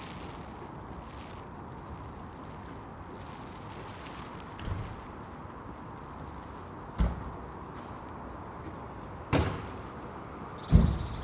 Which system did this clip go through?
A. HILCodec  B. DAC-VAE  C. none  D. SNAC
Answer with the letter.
C